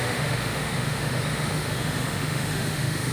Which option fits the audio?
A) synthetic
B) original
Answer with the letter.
A